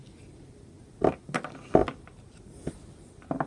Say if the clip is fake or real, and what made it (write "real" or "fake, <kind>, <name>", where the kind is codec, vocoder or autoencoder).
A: real